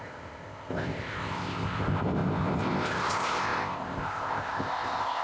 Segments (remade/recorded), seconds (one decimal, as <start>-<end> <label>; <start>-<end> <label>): 0.0-5.2 remade

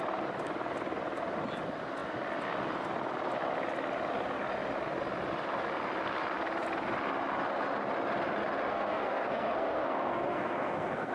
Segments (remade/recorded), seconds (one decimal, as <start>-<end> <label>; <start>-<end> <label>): 0.0-8.7 recorded; 8.7-11.1 remade

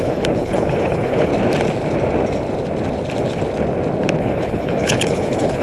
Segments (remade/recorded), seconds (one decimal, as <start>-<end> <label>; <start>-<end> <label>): 0.0-1.3 remade; 1.3-4.2 recorded; 4.2-5.6 remade

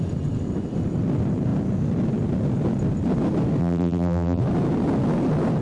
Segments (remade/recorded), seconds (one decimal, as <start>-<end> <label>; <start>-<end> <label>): 0.0-3.6 recorded; 3.6-4.4 remade; 4.4-5.6 recorded

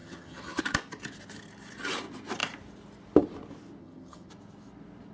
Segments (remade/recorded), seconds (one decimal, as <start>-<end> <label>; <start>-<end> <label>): 0.0-0.6 remade; 0.6-3.8 recorded; 3.8-4.3 remade; 4.3-5.1 recorded